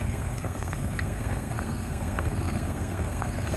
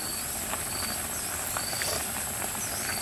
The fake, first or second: first